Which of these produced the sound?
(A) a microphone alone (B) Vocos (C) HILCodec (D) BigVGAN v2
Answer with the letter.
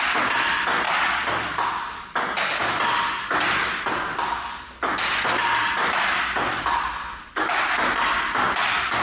A